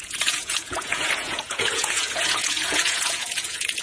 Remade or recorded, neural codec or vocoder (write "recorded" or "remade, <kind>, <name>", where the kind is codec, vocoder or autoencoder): remade, vocoder, Vocos